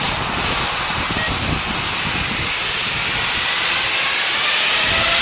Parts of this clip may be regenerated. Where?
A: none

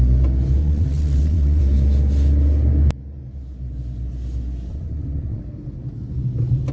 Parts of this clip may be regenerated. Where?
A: 0.6-1.6 (vocoder, WaveNeXt); 4.7-5.4

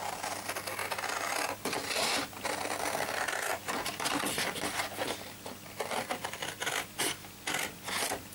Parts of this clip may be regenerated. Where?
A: none

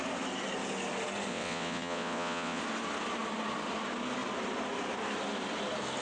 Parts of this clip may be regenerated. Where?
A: 1.3-2.6 (vocoder, WaveNeXt)

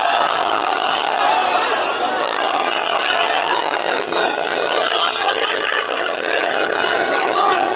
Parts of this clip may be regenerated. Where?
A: 0.0-1.2 (vocoder, HiFi-GAN); 2.2-7.8

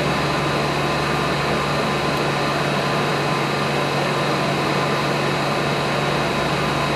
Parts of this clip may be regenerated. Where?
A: none

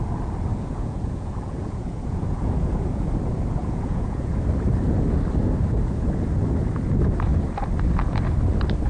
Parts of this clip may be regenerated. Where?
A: 0.5-3.1 (vocoder, Vocos); 3.6-4.3

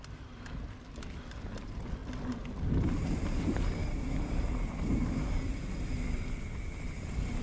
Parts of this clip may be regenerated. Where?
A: none